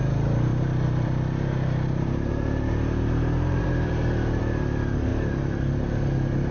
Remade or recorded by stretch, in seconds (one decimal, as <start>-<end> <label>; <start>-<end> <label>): 0.0-0.5 recorded; 0.5-4.4 remade; 4.4-6.5 recorded